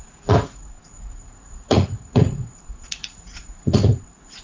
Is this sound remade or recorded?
remade